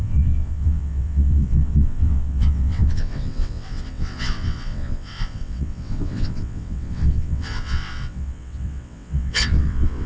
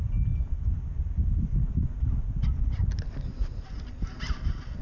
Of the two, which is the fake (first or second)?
first